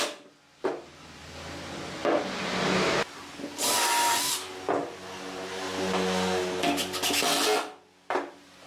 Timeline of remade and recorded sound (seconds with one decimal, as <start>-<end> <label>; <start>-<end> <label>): 0.0-8.7 recorded